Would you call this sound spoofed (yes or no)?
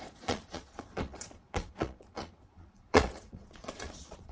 yes